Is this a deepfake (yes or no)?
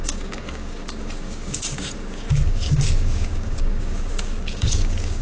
yes